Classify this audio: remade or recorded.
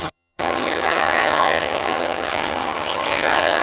remade